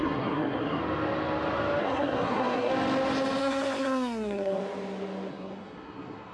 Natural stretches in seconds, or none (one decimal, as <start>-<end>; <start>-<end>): 0.8-1.8; 2.7-3.4; 4.6-5.3